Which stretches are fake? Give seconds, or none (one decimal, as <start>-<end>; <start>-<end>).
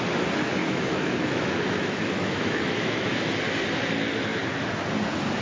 0.6-3.3